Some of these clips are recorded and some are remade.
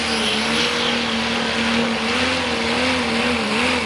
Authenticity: recorded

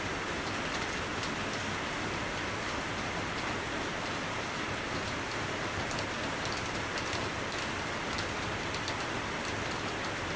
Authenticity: recorded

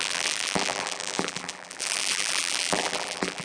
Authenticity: remade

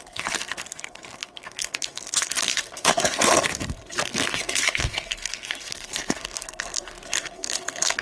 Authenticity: remade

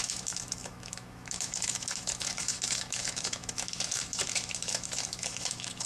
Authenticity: remade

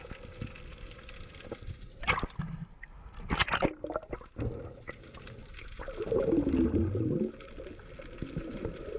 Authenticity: recorded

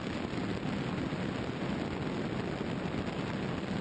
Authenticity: recorded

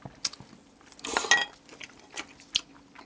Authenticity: recorded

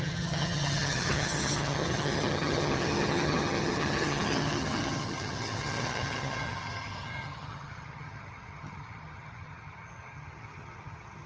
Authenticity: remade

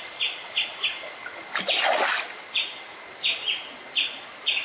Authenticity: recorded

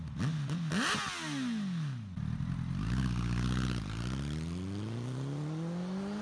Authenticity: recorded